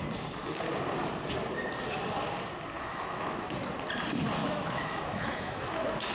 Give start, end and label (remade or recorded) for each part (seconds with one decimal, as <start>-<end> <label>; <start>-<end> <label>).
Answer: 0.0-2.9 recorded; 2.9-3.5 remade; 3.5-4.4 recorded; 4.4-6.1 remade